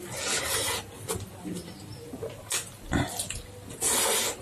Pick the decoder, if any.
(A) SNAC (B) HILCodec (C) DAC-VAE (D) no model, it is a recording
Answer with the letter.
D